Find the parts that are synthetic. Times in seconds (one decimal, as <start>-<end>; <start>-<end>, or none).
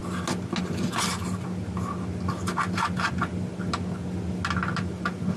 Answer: none